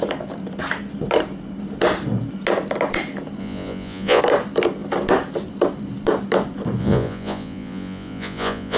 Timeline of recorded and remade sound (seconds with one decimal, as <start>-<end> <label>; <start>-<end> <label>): 0.0-3.4 recorded; 3.4-4.2 remade; 4.2-6.8 recorded; 6.8-8.8 remade